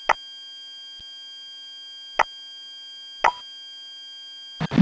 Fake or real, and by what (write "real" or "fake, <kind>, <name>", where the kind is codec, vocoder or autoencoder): real